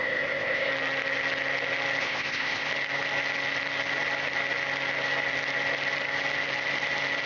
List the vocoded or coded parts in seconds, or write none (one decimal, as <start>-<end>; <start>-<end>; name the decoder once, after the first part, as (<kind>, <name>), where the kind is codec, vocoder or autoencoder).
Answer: 0.0-0.7 (codec, ZipCodec); 2.0-2.7